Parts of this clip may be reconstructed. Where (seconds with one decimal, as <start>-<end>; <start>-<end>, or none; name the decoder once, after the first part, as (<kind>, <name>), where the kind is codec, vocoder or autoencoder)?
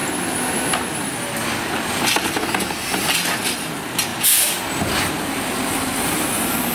3.5-4.1 (vocoder, BigVGAN v2); 5.1-6.7